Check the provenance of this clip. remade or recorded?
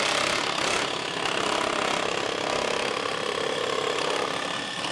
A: recorded